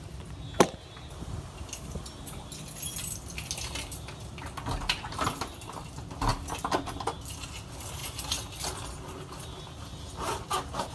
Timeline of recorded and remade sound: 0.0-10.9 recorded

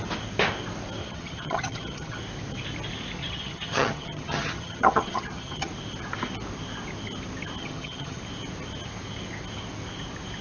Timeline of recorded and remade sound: 0.0-1.0 recorded; 1.0-2.2 remade; 2.2-3.2 recorded; 3.2-5.7 remade; 5.7-7.6 recorded; 7.6-8.2 remade; 8.2-10.4 recorded

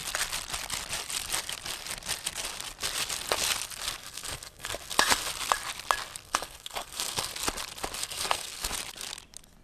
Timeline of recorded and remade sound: 0.0-4.0 recorded; 4.0-5.3 remade; 5.3-6.2 recorded; 6.2-7.3 remade; 7.3-8.0 recorded; 8.0-8.7 remade; 8.7-9.6 recorded

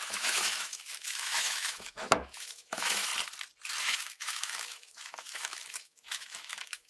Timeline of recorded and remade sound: 0.0-3.1 remade; 3.1-3.8 recorded; 3.8-6.9 remade

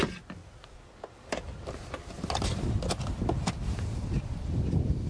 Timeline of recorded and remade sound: 0.0-5.1 recorded

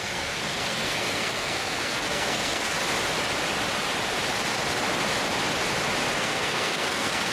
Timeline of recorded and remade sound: 0.0-2.8 remade; 2.8-6.2 recorded; 6.2-7.3 remade

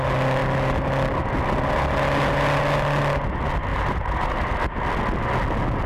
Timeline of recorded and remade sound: 0.0-3.7 recorded; 3.7-4.6 remade; 4.6-5.9 recorded